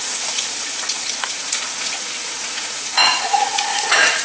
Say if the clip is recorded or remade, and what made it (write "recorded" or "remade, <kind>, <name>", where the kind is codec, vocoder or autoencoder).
remade, vocoder, Vocos